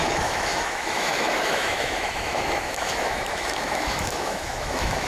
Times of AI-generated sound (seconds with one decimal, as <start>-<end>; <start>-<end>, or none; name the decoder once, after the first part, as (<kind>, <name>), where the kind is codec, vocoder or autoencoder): 0.0-5.1 (autoencoder, DAC-VAE)